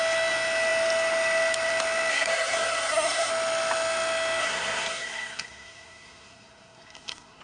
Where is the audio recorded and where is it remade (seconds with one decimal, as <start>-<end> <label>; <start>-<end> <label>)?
0.0-2.1 recorded; 2.1-3.3 remade; 3.3-4.4 recorded; 4.4-7.4 remade